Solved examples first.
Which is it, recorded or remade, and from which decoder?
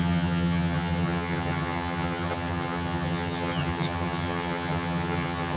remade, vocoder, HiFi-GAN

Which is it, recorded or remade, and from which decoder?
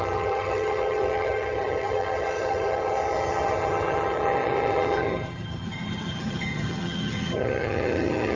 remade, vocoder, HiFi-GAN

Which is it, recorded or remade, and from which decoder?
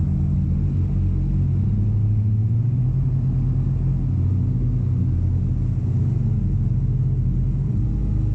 recorded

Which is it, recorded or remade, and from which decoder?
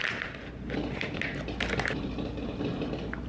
recorded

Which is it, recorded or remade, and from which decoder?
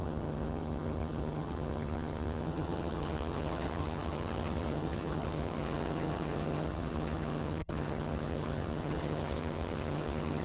remade, vocoder, HiFi-GAN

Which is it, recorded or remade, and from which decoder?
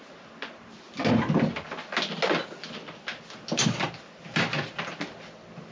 recorded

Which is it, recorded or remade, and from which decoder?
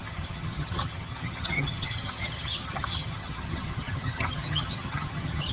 remade, vocoder, HiFi-GAN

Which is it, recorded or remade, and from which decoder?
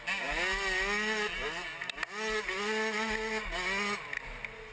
recorded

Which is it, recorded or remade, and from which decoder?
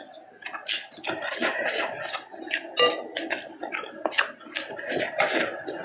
recorded